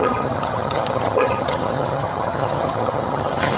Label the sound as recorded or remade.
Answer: remade